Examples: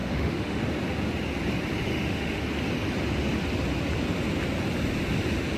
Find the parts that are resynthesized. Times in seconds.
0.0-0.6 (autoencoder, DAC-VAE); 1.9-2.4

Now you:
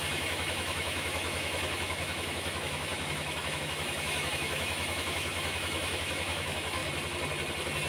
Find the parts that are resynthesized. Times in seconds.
0.0-6.8 (autoencoder, DAC-VAE)